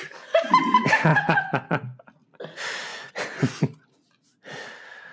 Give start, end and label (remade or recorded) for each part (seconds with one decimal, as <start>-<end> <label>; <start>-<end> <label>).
0.0-1.1 recorded; 1.1-1.7 remade; 1.7-2.9 recorded; 2.9-3.6 remade; 3.6-5.1 recorded